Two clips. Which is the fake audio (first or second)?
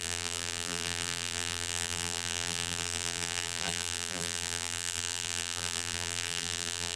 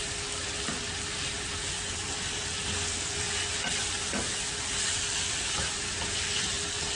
first